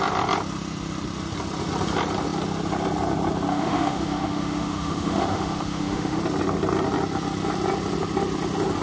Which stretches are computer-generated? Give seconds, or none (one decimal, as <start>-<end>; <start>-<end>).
3.5-6.2